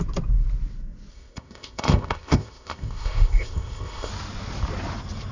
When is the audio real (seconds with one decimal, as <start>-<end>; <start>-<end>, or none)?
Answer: 0.0-1.1; 4.1-5.3